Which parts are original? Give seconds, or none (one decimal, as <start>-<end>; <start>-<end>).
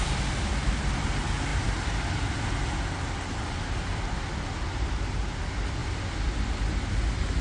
0.0-1.5; 2.3-5.8; 6.5-7.4